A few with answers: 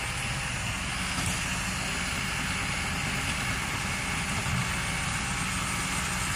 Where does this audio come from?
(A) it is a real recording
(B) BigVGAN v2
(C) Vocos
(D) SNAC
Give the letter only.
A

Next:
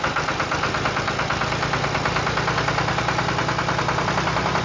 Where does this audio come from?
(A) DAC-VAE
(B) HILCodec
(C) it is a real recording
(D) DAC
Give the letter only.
C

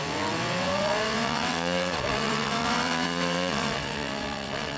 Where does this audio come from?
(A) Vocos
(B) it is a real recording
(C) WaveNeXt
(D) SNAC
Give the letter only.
C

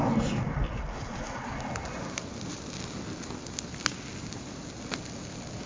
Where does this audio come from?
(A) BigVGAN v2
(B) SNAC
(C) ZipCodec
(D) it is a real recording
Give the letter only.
D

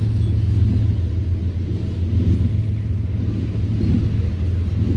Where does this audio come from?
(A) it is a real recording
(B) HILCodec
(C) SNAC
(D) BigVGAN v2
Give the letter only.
A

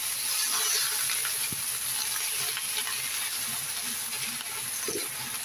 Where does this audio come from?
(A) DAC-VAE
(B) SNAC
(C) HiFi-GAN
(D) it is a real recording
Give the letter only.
D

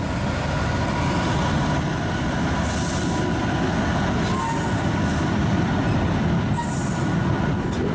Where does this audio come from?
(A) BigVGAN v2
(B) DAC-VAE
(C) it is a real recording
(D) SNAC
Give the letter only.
C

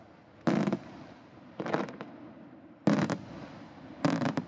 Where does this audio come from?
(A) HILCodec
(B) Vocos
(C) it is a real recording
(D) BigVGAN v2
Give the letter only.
C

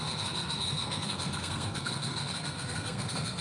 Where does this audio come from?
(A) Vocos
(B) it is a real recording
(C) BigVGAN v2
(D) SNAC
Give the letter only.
D